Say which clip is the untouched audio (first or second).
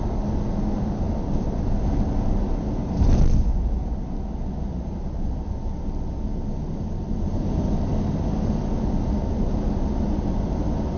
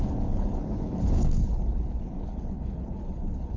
first